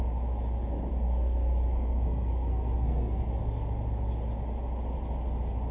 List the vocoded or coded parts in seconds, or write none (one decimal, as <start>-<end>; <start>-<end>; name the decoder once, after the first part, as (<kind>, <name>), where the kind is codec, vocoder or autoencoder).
0.9-3.4 (codec, SNAC)